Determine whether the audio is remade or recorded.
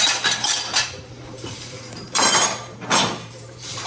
remade